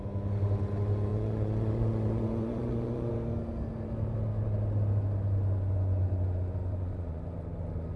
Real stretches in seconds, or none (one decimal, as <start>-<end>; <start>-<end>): 0.0-1.1; 3.1-6.6; 7.2-8.0